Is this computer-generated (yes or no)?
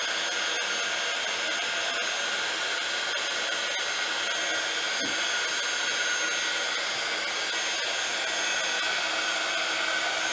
no